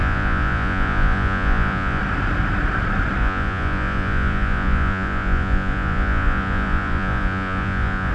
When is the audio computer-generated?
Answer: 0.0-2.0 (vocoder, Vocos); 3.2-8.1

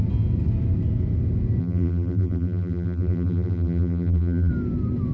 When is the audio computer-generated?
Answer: 1.6-4.5 (vocoder, BigVGAN v2)